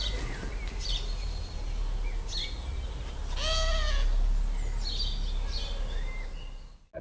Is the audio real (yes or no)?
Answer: yes